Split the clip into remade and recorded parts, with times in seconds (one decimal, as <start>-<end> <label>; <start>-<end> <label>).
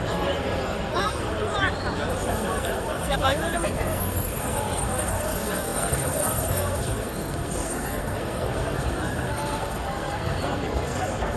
0.0-1.5 remade; 1.5-2.3 recorded; 2.3-11.4 remade